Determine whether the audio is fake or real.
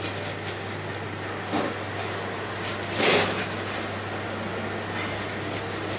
real